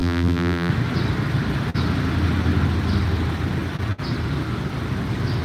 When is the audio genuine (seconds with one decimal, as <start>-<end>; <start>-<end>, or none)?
0.7-5.4